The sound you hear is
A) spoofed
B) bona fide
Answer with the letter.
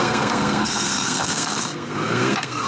A